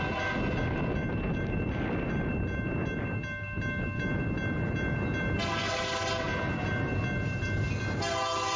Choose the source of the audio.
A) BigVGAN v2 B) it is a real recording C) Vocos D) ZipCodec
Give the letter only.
B